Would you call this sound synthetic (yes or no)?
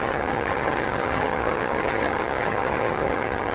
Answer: yes